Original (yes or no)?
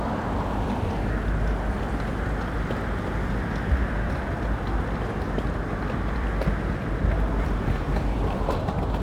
no